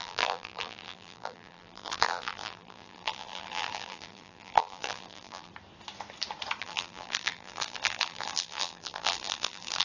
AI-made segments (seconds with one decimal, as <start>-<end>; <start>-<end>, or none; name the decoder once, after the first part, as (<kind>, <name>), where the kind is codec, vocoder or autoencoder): 0.0-5.5 (vocoder, BigVGAN v2); 6.6-9.8